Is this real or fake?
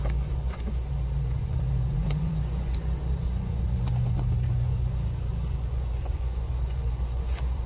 fake